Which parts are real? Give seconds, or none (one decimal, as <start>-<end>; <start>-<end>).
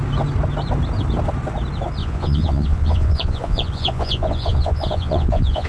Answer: 0.0-2.0